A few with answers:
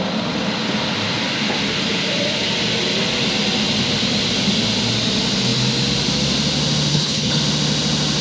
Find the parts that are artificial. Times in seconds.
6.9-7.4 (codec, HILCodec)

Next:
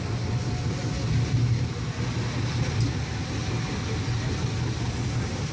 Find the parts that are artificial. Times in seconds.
none

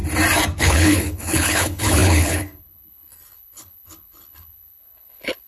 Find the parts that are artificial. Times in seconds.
0.6-5.5 (codec, HILCodec)

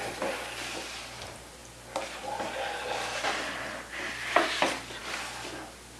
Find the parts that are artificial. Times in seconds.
none

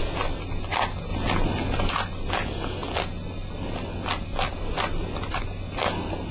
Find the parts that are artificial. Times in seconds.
none

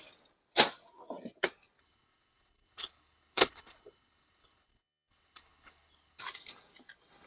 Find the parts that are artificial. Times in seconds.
1.8-6.2 (codec, HILCodec)

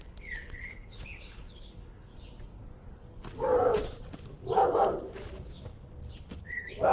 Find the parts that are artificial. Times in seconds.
0.0-2.1 (codec, HILCodec); 6.2-6.9